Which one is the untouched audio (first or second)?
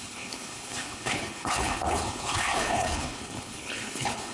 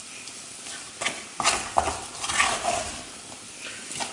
second